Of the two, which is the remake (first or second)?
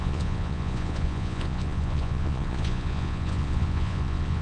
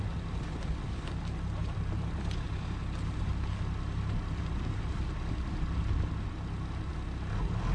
first